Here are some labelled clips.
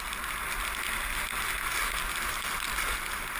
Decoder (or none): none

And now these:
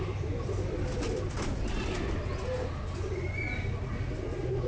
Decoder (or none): none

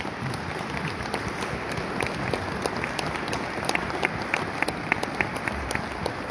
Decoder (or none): none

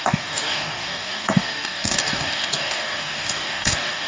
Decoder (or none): codec, DAC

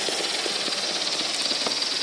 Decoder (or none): none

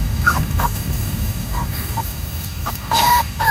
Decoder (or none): codec, DAC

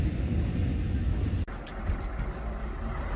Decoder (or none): none